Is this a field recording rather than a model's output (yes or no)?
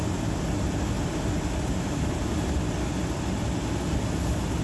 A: yes